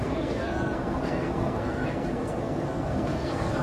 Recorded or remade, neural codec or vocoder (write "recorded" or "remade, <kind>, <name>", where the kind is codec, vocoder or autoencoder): remade, codec, SNAC